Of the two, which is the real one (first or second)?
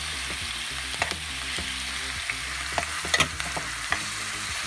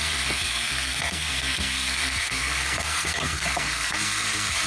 first